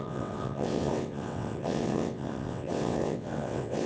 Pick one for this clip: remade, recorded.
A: remade